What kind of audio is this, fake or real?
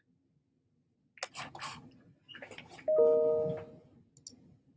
real